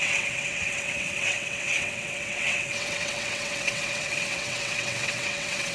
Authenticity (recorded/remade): remade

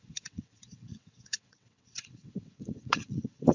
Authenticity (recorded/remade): remade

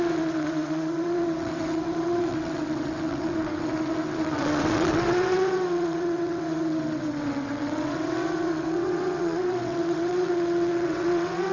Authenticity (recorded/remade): remade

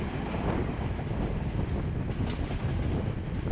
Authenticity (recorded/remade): recorded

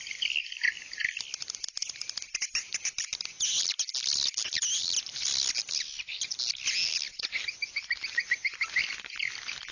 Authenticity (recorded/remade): recorded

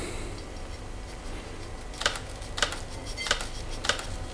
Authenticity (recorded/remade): recorded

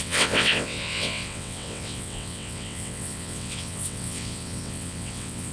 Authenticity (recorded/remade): remade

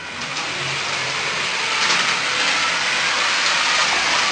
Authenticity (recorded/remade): recorded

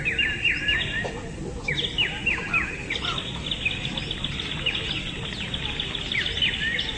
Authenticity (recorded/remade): recorded